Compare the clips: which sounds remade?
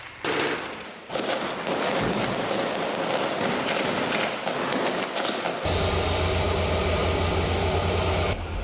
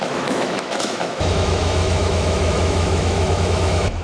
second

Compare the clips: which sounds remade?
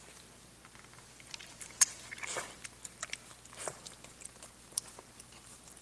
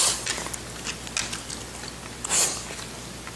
first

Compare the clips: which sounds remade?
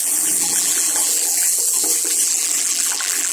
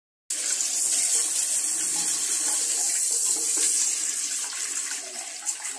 first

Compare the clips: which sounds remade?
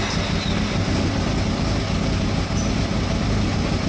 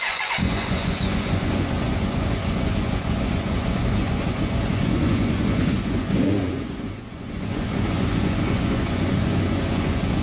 second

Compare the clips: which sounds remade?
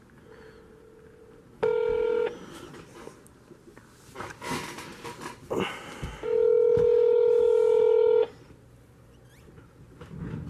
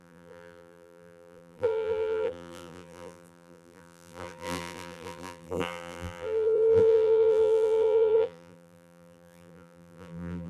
second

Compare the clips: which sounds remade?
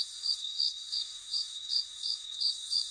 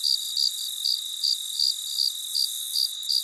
first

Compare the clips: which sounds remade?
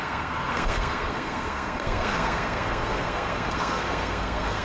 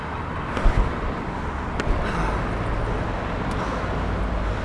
first